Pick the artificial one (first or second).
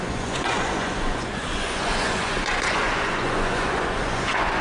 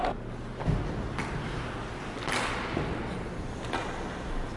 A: first